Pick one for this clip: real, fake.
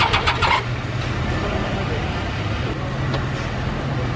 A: real